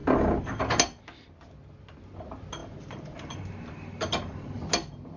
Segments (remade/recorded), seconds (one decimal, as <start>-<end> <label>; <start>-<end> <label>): 0.0-0.5 remade; 0.5-2.6 recorded; 2.6-4.7 remade; 4.7-5.2 recorded